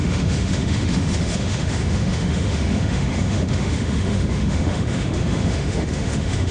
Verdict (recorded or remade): remade